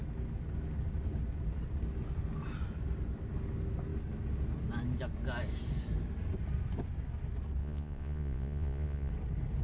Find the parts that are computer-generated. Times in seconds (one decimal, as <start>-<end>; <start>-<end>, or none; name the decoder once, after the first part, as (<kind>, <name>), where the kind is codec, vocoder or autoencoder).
7.6-9.1 (vocoder, Vocos)